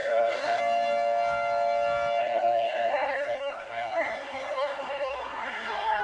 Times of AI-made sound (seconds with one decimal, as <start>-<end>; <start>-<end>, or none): 0.0-0.6; 2.2-6.0

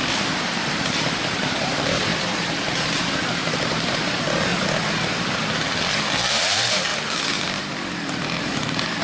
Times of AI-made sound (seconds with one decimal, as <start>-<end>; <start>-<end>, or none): 0.0-2.1; 3.0-4.5; 6.3-6.9; 8.1-9.0

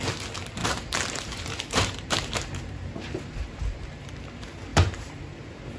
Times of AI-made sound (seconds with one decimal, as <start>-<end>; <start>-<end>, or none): 0.6-4.1; 4.7-5.8

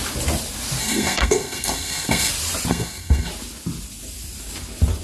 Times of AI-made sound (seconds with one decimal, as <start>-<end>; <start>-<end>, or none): 0.8-2.3; 2.7-3.3